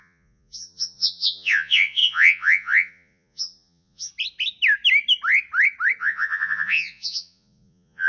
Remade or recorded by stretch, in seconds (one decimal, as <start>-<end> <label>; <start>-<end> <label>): 0.0-4.1 remade; 4.1-6.0 recorded; 6.0-8.1 remade